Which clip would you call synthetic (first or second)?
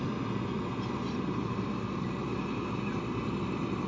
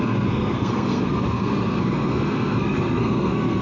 second